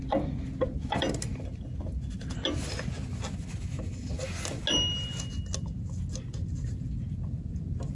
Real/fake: real